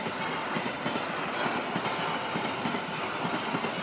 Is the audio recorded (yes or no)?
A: yes